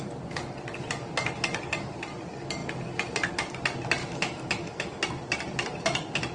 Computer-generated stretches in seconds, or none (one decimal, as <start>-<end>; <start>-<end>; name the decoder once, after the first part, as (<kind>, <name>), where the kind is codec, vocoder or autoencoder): 4.0-5.0 (autoencoder, DAC-VAE)